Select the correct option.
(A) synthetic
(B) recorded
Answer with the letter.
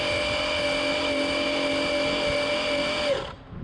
B